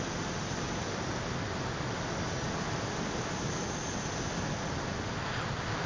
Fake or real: real